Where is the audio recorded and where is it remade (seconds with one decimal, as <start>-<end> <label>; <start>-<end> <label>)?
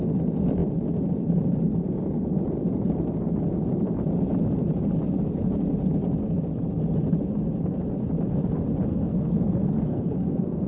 0.0-8.9 recorded; 8.9-10.7 remade